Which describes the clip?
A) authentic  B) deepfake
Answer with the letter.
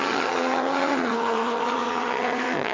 B